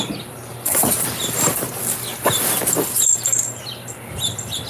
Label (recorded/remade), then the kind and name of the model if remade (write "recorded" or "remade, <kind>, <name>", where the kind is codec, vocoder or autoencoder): recorded